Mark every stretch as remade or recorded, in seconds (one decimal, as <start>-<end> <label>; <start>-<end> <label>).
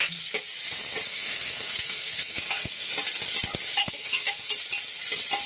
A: 0.0-1.1 recorded; 1.1-2.9 remade; 2.9-3.8 recorded; 3.8-4.5 remade; 4.5-5.5 recorded